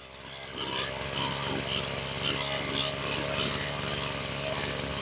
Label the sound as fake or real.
real